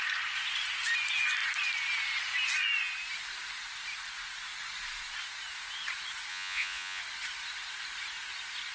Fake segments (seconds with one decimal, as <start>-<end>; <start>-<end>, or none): 6.3-7.0